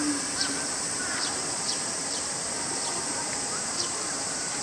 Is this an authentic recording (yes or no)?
no